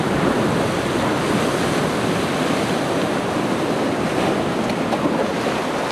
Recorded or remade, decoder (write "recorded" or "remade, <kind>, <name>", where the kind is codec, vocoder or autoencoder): remade, vocoder, BigVGAN v2